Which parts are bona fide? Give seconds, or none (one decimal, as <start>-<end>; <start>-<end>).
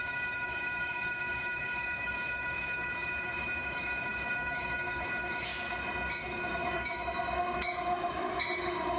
5.5-6.2